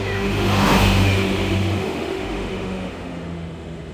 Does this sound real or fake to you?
fake